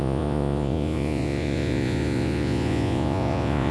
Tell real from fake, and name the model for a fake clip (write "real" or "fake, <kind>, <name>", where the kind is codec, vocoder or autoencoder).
fake, vocoder, Vocos